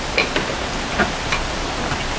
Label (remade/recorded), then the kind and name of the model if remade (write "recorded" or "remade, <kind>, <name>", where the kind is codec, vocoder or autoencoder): recorded